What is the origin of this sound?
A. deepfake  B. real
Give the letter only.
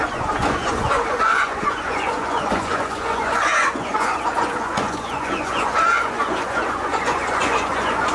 A